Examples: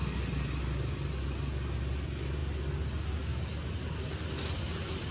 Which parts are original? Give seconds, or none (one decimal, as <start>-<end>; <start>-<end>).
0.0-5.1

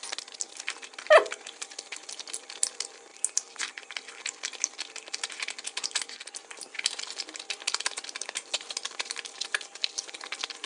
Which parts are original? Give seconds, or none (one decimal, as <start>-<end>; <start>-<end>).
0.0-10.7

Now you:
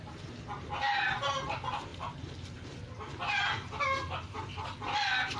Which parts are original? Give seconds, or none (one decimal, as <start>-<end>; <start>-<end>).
0.0-5.4

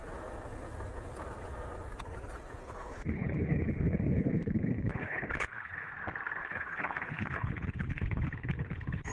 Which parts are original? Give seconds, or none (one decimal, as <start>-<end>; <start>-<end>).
0.0-2.6; 5.9-6.4

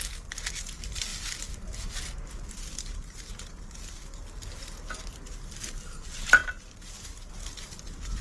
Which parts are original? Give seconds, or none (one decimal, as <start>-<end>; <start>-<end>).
0.0-8.2